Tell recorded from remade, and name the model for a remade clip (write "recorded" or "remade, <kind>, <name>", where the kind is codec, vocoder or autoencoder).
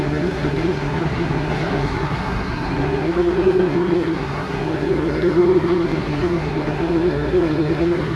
remade, codec, SNAC